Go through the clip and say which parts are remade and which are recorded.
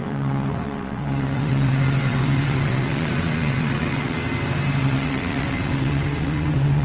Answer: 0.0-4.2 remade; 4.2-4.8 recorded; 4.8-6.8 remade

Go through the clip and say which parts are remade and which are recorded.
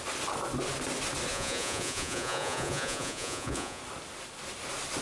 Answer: 0.0-1.3 recorded; 1.3-3.8 remade; 3.8-5.0 recorded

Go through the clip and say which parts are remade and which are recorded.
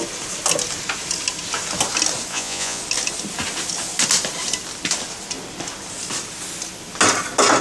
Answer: 0.0-2.3 recorded; 2.3-2.8 remade; 2.8-7.6 recorded